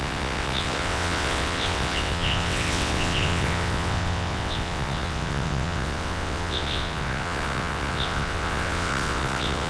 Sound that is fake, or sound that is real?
fake